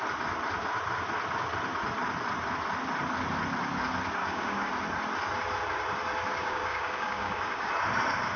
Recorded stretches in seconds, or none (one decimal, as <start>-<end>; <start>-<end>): 0.0-4.2; 4.7-6.3; 7.7-8.4